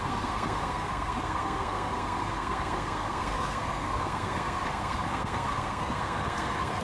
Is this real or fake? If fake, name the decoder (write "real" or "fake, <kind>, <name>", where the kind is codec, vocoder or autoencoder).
fake, codec, SNAC